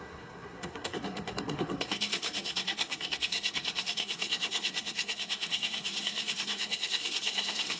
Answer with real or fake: fake